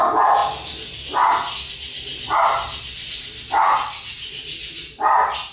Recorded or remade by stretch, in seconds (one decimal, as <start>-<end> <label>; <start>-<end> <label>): 0.0-5.5 recorded

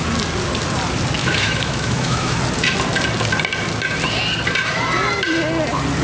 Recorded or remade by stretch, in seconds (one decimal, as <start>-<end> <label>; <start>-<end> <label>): 0.0-1.2 recorded; 1.2-2.4 remade; 2.4-6.0 recorded

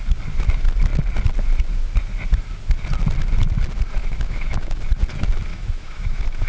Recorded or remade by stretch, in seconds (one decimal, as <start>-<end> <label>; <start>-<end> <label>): 0.0-4.0 recorded; 4.0-4.8 remade; 4.8-5.5 recorded; 5.5-6.5 remade

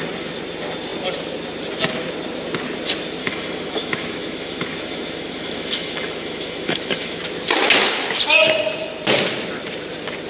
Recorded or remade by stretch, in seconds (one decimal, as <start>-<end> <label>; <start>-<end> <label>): 0.0-3.2 recorded; 3.2-7.2 remade; 7.2-10.3 recorded

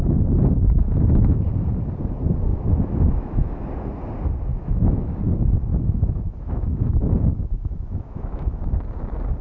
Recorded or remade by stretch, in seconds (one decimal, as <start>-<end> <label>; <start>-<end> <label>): 0.0-2.5 recorded; 2.5-3.5 remade; 3.5-4.5 recorded; 4.5-5.1 remade; 5.1-5.7 recorded; 5.7-8.6 remade; 8.6-9.4 recorded

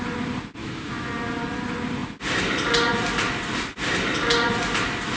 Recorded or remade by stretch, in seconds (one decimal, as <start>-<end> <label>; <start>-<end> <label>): 0.0-0.6 recorded; 0.6-1.1 remade; 1.1-5.2 recorded

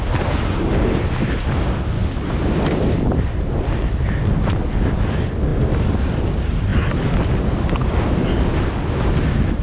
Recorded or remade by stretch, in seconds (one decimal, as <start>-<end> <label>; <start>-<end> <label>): 0.0-9.6 recorded

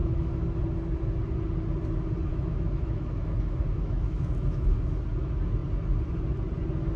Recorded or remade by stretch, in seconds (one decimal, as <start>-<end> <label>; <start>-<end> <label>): 0.0-0.6 remade; 0.6-2.3 recorded; 2.3-5.0 remade; 5.0-7.0 recorded